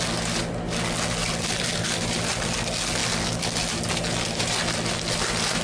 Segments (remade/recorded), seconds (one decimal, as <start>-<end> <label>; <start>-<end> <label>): 0.0-1.2 recorded; 1.2-2.5 remade; 2.5-5.6 recorded